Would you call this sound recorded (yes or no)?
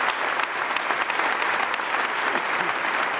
yes